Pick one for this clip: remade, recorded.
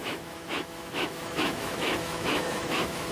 remade